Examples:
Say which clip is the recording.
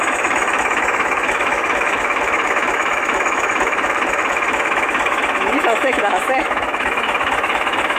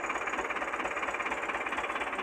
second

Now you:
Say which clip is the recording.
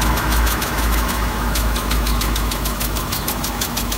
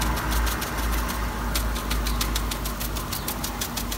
second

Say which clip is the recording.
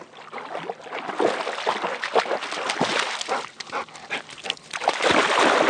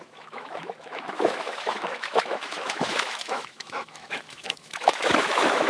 first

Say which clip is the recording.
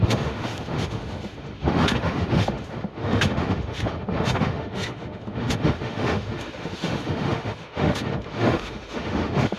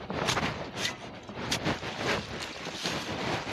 second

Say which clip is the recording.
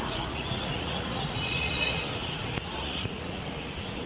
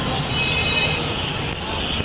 second